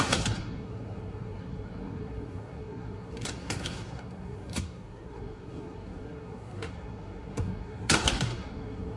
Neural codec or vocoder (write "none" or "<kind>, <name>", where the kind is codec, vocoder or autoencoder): codec, SNAC